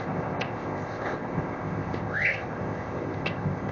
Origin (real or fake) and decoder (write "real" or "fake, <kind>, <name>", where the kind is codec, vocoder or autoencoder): fake, codec, ZipCodec